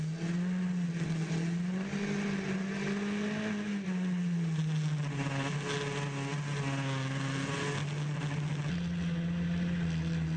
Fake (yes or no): no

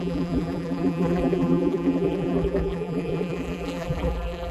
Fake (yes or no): yes